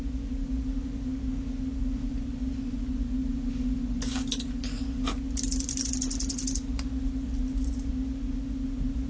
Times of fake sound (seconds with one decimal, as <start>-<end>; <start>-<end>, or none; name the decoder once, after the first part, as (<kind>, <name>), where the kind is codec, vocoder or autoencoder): none